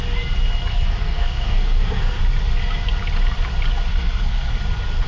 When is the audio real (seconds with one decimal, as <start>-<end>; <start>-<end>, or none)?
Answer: 0.0-0.7; 2.2-3.9; 4.6-5.1